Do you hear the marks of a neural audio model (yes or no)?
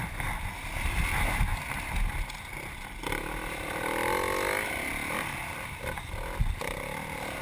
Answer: no